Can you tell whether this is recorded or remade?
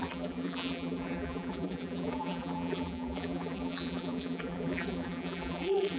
remade